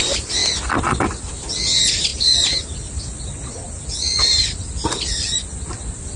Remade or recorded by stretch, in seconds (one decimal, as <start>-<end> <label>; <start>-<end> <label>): 0.0-6.2 recorded